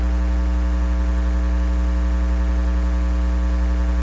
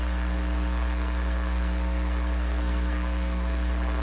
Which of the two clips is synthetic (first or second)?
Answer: second